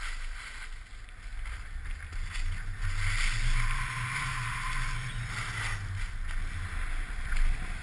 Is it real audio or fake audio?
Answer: real